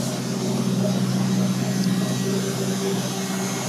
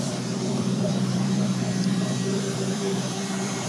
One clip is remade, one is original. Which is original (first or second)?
first